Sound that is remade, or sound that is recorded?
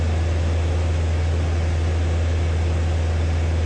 recorded